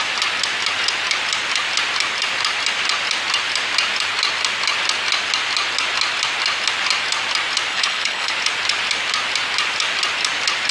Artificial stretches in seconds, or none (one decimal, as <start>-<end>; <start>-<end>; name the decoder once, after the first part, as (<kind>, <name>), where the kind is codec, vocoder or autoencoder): 7.7-8.3 (codec, HILCodec)

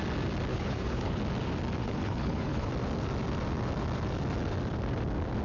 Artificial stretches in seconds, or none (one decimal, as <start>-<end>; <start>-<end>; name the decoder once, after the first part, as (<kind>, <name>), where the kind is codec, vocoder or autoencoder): 0.5-1.2 (codec, HILCodec); 1.8-2.7

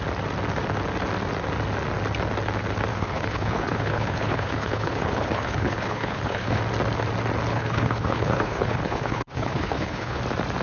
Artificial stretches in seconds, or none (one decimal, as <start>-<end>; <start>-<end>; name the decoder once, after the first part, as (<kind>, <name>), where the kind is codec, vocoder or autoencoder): 2.9-6.6 (codec, HILCodec); 7.5-10.2

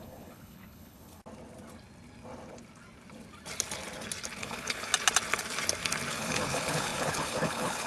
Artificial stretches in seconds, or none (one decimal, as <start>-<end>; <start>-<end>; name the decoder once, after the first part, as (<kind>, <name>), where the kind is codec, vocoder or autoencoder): 0.0-1.2 (codec, HILCodec); 4.4-4.9; 6.1-7.9

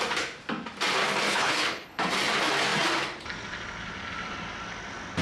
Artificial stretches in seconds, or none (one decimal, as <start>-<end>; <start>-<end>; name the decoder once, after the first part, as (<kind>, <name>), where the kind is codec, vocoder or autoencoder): 1.3-2.0 (codec, HILCodec)